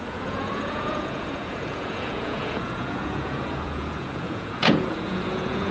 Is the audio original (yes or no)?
no